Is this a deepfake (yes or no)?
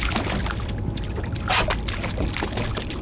no